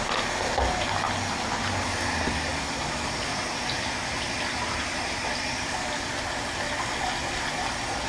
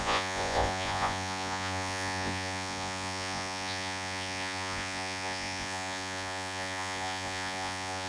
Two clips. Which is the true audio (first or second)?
first